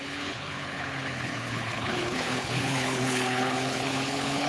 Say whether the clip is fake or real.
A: fake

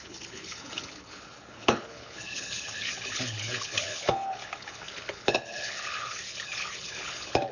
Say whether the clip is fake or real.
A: fake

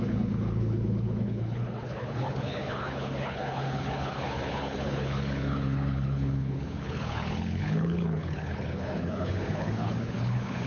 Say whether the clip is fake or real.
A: fake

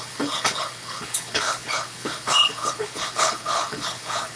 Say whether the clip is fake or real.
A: fake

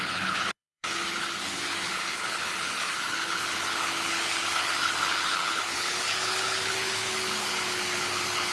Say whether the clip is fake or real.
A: fake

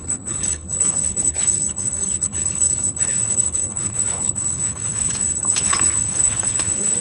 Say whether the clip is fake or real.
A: fake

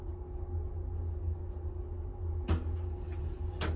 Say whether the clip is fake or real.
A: real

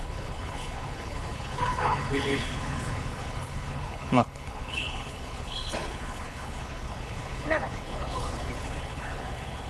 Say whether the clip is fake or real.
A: fake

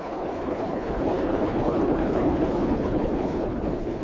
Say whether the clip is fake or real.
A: fake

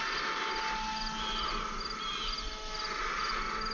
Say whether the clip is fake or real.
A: real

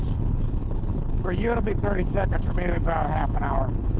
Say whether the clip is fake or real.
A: fake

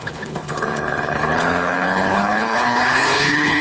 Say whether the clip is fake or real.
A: fake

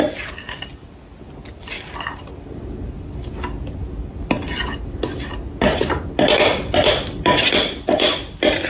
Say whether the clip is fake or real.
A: real